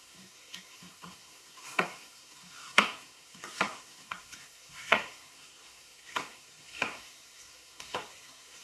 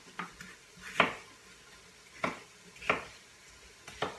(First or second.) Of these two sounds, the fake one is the first